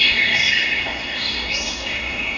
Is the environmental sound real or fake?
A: fake